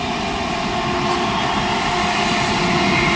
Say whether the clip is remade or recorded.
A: recorded